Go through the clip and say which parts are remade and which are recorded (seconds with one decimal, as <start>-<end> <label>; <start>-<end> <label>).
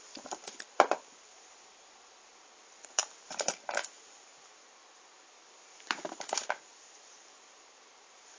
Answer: 0.0-8.4 remade